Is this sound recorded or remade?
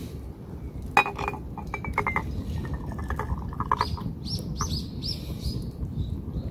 recorded